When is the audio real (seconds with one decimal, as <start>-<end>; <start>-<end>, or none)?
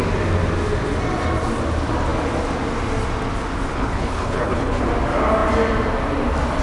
0.0-3.7; 4.8-6.6